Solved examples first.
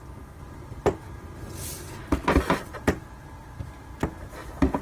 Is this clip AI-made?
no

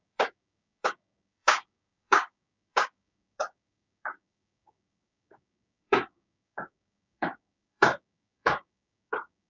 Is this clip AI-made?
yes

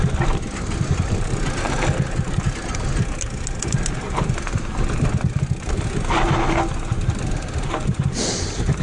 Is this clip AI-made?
no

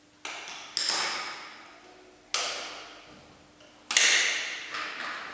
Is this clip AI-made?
no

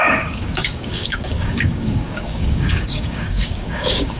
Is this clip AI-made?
yes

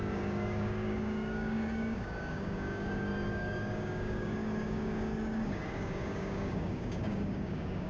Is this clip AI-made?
yes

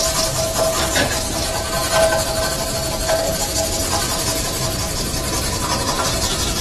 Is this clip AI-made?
no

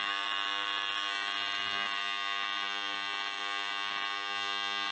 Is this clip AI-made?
yes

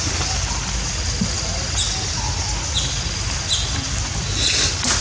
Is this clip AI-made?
no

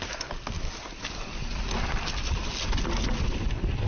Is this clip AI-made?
no